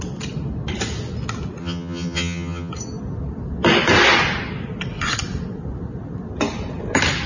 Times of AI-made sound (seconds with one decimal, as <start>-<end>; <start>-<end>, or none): 1.6-2.7